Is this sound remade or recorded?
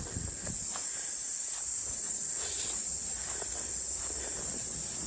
recorded